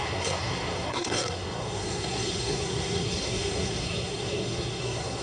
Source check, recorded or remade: remade